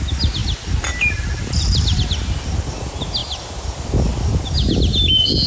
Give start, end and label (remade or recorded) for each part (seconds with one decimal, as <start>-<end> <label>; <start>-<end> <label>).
0.0-5.5 recorded

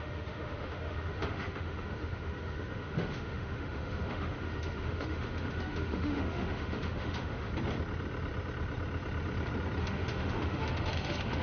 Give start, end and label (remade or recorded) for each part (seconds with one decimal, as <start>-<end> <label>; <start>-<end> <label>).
0.0-7.5 remade; 7.5-9.8 recorded; 9.8-11.4 remade

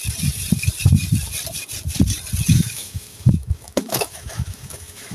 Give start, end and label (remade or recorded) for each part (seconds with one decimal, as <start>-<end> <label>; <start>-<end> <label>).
0.0-2.5 recorded; 2.5-5.1 remade

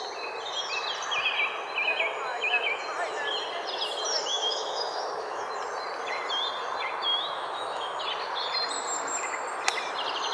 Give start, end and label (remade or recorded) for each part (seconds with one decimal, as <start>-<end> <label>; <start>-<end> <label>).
0.0-2.3 recorded; 2.3-2.8 remade; 2.8-4.3 recorded; 4.3-5.4 remade; 5.4-7.1 recorded; 7.1-8.0 remade; 8.0-10.3 recorded

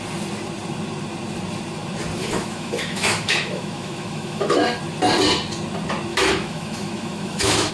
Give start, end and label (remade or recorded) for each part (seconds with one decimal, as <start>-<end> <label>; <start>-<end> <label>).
0.0-2.2 recorded; 2.2-4.8 remade; 4.8-6.1 recorded; 6.1-7.7 remade